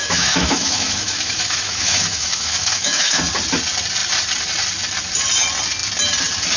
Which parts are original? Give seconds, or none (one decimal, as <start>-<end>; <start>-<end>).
3.2-6.6